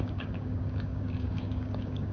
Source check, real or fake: fake